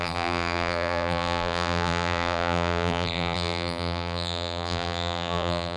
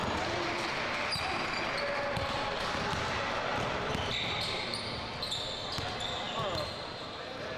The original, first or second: second